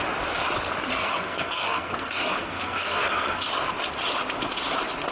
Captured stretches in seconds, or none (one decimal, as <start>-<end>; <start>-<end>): 0.0-1.0; 3.5-5.1